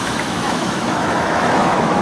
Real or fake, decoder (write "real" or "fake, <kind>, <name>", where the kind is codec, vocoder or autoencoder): fake, autoencoder, DAC-VAE